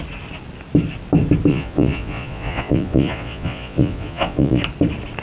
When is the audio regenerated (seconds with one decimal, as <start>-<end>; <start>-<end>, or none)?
1.5-4.6